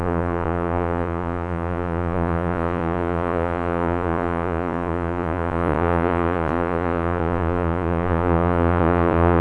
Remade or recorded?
remade